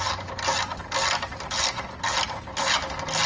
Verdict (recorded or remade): recorded